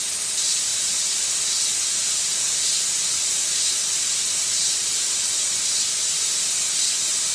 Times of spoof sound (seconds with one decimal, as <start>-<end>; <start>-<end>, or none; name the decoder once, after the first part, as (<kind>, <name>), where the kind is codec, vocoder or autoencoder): none